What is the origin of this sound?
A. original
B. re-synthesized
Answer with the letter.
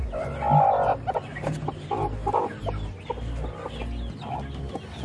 A